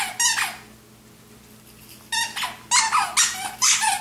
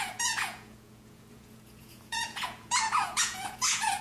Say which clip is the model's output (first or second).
second